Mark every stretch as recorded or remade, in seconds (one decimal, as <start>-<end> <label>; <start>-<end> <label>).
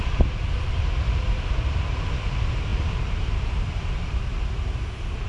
0.0-5.3 recorded